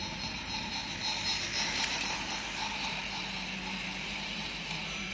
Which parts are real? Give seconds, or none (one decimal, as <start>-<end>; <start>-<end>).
0.8-1.6